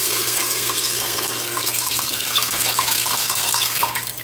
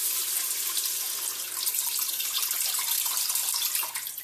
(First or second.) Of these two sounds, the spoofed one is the first